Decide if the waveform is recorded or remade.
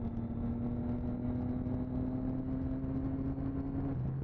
recorded